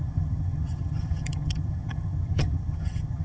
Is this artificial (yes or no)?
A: yes